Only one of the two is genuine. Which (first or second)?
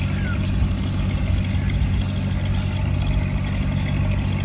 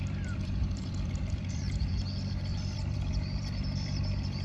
first